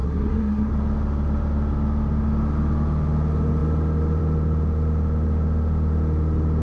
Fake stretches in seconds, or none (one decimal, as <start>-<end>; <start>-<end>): 0.0-0.7